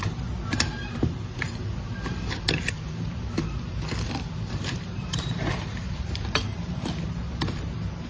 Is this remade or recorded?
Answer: remade